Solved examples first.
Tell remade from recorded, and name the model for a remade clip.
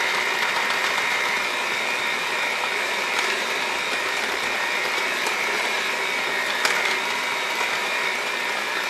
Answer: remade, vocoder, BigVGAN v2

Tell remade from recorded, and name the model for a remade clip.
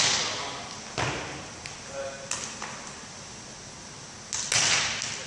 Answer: recorded